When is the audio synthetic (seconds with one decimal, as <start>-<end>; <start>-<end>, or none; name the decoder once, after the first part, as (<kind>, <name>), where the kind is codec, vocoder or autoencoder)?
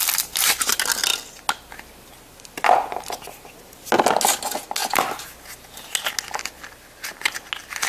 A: none